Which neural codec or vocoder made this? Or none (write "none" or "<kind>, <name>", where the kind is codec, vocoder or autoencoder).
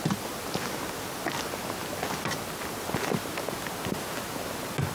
none